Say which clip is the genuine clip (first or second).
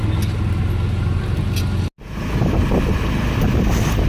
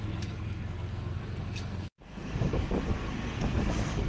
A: first